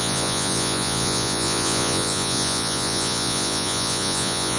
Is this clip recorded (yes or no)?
no